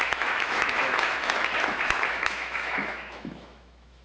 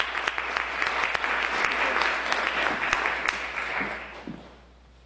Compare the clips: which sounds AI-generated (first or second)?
first